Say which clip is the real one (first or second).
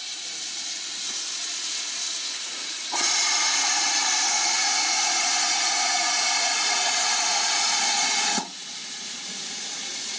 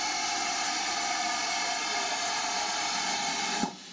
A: second